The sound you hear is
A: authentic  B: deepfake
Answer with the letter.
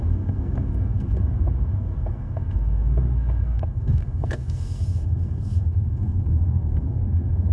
B